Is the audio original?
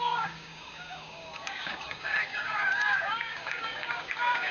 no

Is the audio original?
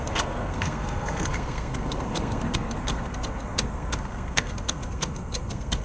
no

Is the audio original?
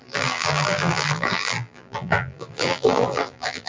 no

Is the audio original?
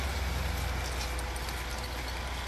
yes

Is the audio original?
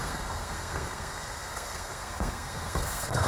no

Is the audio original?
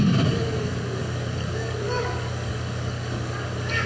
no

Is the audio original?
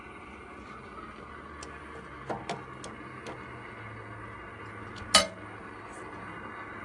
yes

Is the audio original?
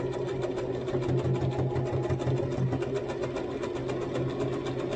yes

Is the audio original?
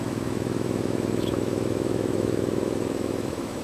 no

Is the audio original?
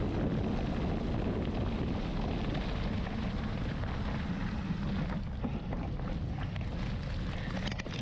yes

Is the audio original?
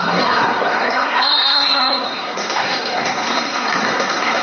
no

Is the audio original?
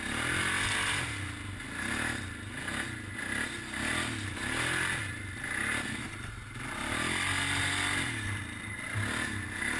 yes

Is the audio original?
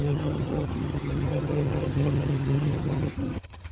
no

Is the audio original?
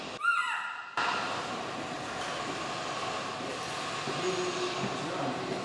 yes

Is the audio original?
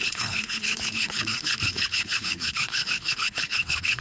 no